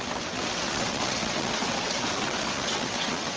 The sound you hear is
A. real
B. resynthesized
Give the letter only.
B